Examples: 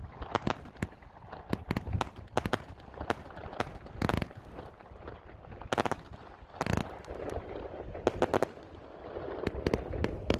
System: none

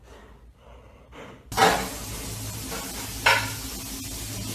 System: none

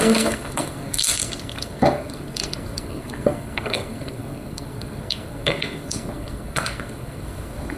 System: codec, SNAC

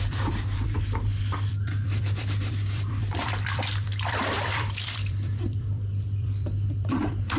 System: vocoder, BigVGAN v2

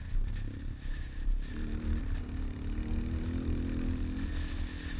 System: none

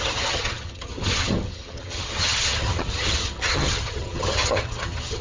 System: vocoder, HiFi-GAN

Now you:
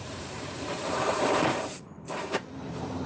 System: vocoder, BigVGAN v2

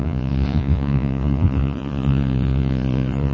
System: vocoder, Vocos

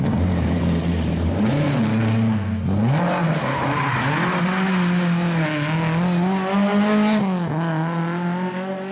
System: none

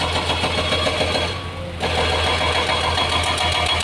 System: none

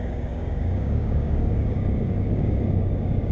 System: codec, DAC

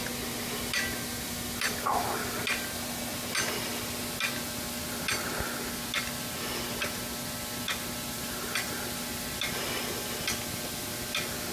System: none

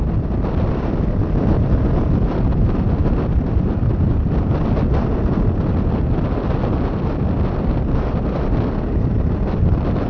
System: none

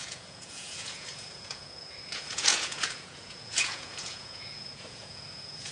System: vocoder, Vocos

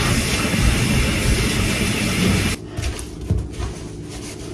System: none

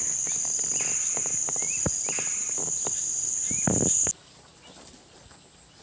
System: none